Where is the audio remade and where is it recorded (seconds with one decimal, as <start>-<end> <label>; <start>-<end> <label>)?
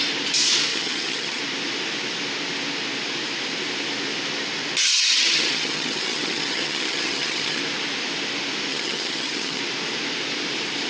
0.0-0.7 recorded; 0.7-1.4 remade; 1.4-4.9 recorded; 4.9-7.6 remade; 7.6-8.7 recorded; 8.7-9.6 remade; 9.6-10.9 recorded